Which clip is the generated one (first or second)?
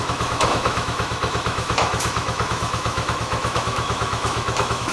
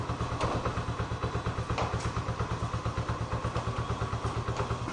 first